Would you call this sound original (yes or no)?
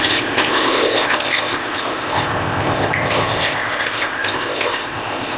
no